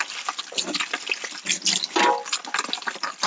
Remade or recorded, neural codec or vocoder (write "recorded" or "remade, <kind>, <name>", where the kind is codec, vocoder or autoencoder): recorded